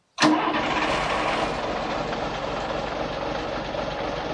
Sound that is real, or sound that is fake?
real